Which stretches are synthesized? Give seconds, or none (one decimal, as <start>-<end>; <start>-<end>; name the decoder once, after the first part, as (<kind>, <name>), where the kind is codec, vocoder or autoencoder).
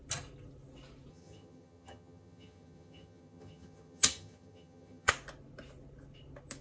1.1-5.1 (vocoder, HiFi-GAN)